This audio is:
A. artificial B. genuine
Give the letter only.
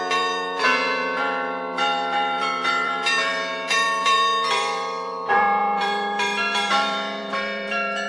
A